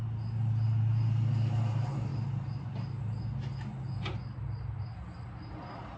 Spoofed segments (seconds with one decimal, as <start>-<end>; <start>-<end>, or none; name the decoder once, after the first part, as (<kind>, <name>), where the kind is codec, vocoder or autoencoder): none